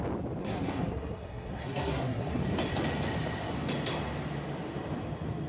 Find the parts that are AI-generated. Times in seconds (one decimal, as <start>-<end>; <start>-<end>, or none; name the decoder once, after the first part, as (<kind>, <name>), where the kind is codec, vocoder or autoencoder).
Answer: 0.4-2.4 (codec, SNAC)